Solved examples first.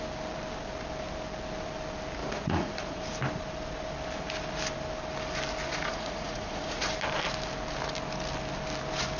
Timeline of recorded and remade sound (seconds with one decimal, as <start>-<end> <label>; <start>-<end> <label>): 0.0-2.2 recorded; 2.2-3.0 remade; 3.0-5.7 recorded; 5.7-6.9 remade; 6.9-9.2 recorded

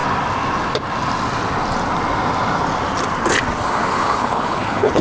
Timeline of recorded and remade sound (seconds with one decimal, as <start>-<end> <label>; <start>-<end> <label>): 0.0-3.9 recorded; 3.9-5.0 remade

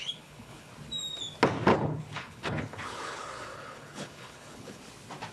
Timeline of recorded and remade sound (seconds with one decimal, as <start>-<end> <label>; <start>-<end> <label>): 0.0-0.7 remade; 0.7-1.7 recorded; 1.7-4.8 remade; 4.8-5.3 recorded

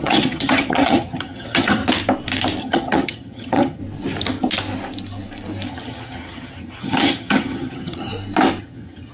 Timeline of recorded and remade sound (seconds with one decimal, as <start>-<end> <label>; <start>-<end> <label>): 0.0-1.8 remade; 1.8-2.6 recorded; 2.6-3.8 remade; 3.8-5.7 recorded; 5.7-8.1 remade; 8.1-8.6 recorded; 8.6-9.1 remade

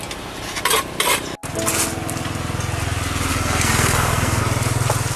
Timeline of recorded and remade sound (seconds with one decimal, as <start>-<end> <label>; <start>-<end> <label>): 0.0-3.3 recorded; 3.3-4.4 remade; 4.4-5.2 recorded

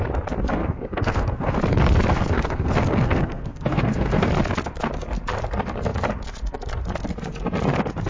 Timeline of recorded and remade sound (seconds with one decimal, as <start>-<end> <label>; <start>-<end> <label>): 0.0-0.6 recorded; 0.6-1.6 remade; 1.6-2.1 recorded; 2.1-4.3 remade; 4.3-8.1 recorded